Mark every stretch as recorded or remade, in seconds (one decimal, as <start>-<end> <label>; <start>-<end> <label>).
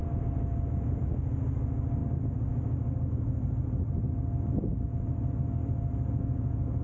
0.0-6.8 recorded